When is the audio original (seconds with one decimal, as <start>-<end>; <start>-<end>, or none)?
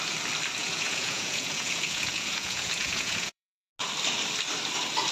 0.0-0.6; 3.7-5.1